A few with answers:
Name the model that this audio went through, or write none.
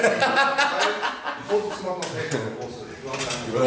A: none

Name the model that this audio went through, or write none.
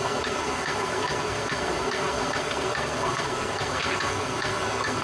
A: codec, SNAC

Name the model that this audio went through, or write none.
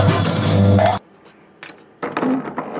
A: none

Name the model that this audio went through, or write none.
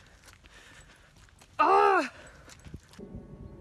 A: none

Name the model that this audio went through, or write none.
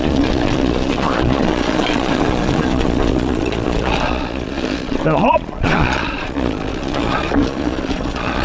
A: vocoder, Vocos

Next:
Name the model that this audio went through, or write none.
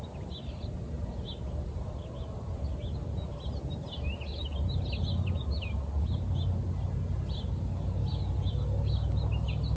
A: none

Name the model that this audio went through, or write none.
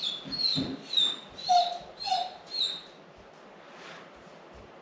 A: none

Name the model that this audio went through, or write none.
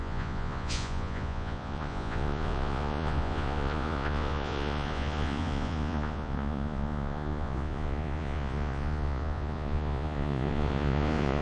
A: vocoder, Vocos